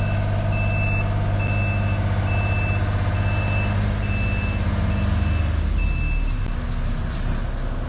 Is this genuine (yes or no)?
yes